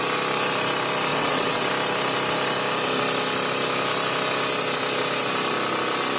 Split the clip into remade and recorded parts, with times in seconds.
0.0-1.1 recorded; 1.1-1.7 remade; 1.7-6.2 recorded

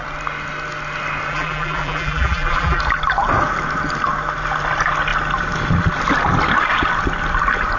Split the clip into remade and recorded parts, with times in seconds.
0.0-1.3 recorded; 1.3-2.8 remade; 2.8-7.8 recorded